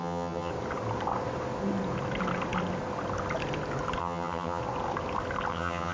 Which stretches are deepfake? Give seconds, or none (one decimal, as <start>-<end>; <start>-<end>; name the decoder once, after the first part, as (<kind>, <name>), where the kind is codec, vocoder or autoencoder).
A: 0.0-0.5 (vocoder, HiFi-GAN); 4.0-4.6; 5.5-5.9